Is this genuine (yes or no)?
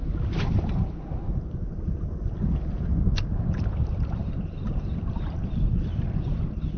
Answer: yes